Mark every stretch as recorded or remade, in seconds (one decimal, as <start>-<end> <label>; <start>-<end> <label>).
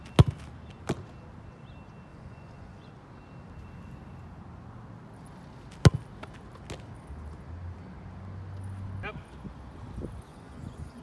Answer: 0.0-2.1 recorded; 2.1-2.9 remade; 2.9-10.3 recorded; 10.3-11.0 remade